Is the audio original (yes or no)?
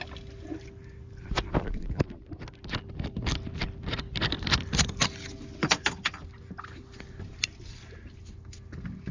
yes